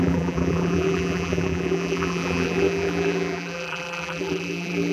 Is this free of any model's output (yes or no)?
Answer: no